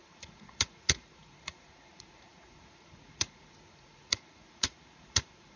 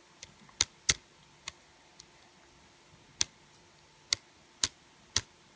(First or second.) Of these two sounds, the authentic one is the second